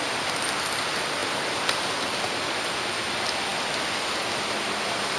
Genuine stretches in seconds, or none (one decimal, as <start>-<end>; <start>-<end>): 0.0-5.2

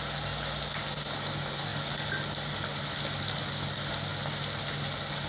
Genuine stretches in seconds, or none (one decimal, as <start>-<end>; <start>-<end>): 0.0-5.3

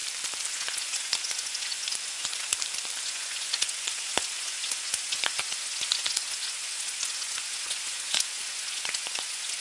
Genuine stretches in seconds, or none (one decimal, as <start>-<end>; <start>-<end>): 0.0-0.5; 2.5-3.0

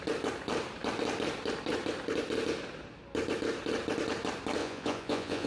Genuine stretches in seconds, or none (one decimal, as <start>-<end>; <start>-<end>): 0.0-4.6

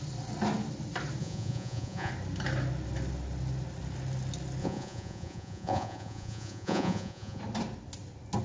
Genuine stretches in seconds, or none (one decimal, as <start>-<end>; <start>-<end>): 0.0-1.2; 2.1-4.6; 7.4-8.4